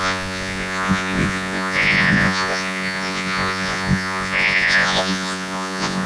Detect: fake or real fake